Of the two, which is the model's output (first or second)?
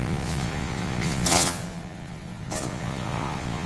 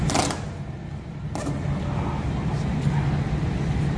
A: first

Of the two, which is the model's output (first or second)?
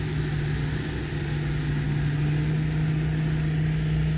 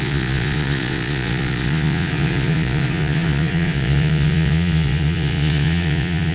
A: second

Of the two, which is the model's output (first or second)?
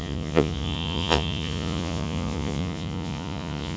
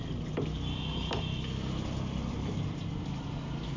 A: first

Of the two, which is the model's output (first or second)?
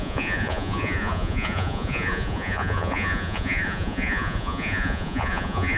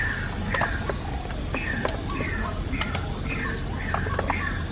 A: first